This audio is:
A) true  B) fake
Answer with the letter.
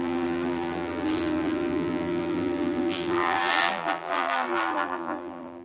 B